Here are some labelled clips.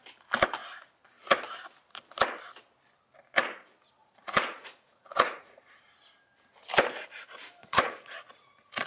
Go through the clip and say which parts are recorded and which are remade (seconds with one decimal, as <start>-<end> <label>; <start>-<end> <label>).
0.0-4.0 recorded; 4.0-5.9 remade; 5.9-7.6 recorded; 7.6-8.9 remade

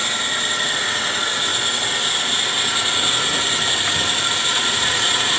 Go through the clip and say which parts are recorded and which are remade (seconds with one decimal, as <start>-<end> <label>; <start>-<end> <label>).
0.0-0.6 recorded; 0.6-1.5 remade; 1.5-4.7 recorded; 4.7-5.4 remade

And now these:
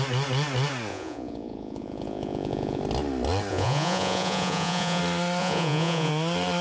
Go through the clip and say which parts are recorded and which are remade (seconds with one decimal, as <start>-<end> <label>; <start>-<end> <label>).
0.0-0.9 recorded; 0.9-2.8 remade; 2.8-3.5 recorded; 3.5-5.0 remade; 5.0-5.4 recorded; 5.4-6.1 remade; 6.1-6.6 recorded

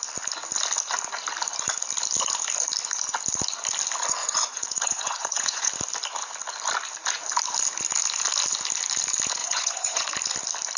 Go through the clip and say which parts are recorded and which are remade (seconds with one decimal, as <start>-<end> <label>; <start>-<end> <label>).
0.0-4.2 recorded; 4.2-5.7 remade; 5.7-9.4 recorded; 9.4-10.1 remade; 10.1-10.8 recorded

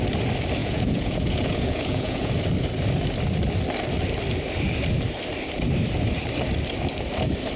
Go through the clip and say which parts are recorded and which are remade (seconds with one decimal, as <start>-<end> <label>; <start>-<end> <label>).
0.0-0.6 recorded; 0.6-2.3 remade; 2.3-7.6 recorded

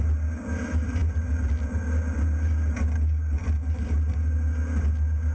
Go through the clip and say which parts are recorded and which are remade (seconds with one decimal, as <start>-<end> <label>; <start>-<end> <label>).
0.0-5.3 recorded